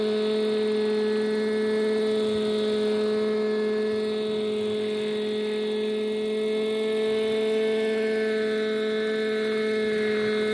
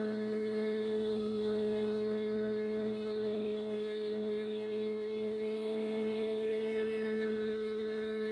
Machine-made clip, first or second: second